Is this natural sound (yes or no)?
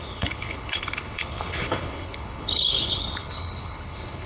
no